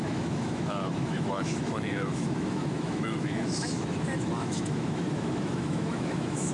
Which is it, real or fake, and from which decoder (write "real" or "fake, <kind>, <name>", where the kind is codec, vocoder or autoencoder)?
fake, autoencoder, DAC-VAE